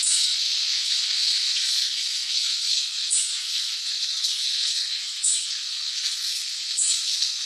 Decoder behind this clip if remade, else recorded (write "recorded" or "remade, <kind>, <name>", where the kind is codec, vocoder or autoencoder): remade, codec, SNAC